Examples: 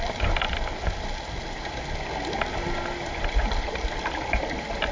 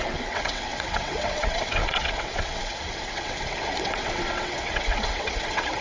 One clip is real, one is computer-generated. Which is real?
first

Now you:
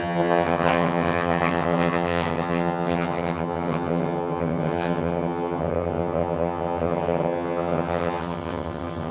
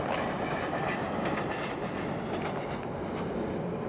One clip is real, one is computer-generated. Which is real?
second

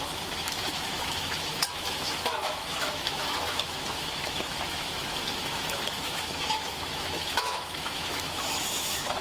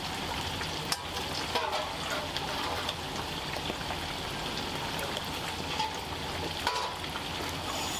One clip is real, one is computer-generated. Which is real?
second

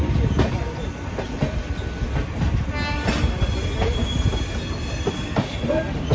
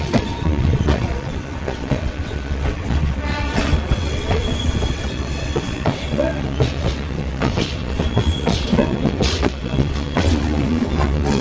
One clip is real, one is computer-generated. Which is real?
first